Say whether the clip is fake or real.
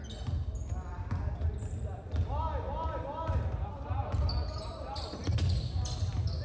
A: real